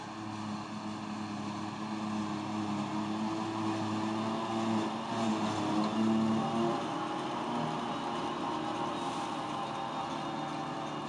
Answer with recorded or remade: recorded